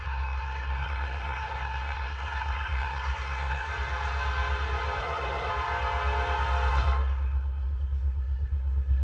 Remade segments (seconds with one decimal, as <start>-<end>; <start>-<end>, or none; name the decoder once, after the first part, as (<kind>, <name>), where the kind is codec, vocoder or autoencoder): 0.0-3.7 (codec, SNAC); 5.0-5.5; 6.7-9.0